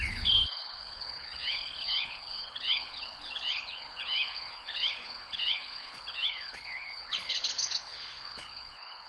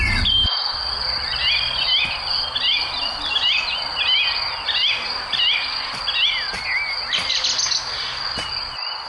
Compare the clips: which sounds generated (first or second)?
first